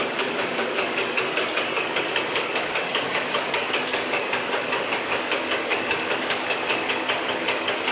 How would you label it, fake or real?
fake